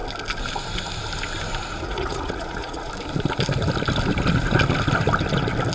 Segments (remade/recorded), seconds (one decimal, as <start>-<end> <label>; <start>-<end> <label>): 0.0-1.7 recorded; 1.7-2.9 remade; 2.9-5.7 recorded